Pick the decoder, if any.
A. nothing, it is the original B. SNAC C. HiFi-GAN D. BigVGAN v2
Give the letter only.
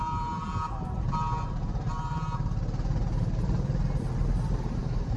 A